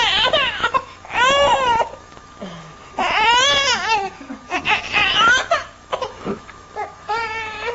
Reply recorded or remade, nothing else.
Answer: remade